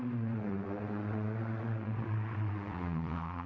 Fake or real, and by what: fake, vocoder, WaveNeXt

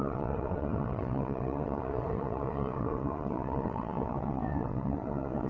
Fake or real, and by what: fake, vocoder, WaveNeXt